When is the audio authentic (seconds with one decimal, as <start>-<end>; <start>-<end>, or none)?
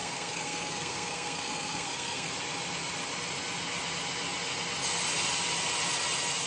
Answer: 2.3-6.5